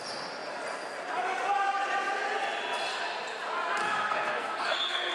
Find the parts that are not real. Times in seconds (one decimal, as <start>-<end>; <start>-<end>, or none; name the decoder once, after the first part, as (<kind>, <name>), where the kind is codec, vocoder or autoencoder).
3.8-5.1 (codec, SNAC)